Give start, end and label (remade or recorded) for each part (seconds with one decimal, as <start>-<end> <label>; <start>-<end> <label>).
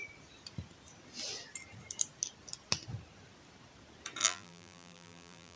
0.0-4.2 recorded; 4.2-5.6 remade